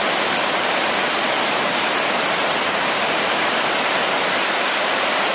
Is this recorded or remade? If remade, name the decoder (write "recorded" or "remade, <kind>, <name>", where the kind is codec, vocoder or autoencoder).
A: remade, vocoder, BigVGAN v2